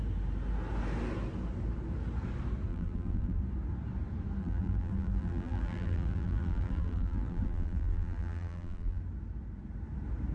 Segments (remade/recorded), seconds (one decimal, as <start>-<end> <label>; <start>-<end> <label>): 0.0-2.7 recorded; 2.7-3.4 remade; 3.4-4.4 recorded; 4.4-9.0 remade; 9.0-10.3 recorded